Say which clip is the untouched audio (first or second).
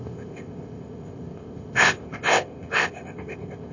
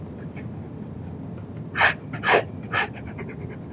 second